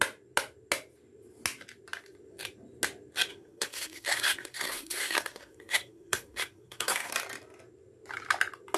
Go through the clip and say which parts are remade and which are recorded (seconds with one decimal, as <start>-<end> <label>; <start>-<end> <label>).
0.0-3.3 recorded; 3.3-7.1 remade; 7.1-8.8 recorded